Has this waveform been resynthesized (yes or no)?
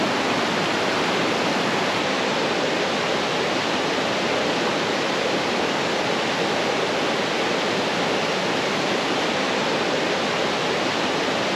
no